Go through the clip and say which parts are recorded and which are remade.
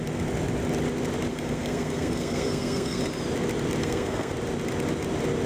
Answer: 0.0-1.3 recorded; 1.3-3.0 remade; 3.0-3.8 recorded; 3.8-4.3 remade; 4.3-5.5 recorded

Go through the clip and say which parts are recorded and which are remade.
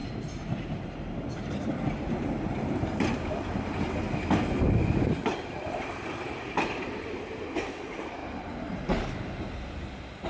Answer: 0.0-3.9 remade; 3.9-5.2 recorded; 5.2-7.7 remade; 7.7-8.2 recorded; 8.2-9.4 remade; 9.4-10.3 recorded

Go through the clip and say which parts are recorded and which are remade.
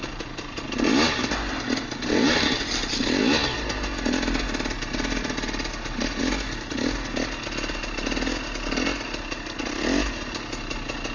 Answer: 0.0-11.1 recorded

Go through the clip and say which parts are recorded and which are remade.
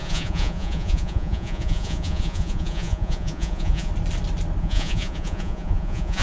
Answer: 0.0-3.9 remade; 3.9-4.6 recorded; 4.6-6.2 remade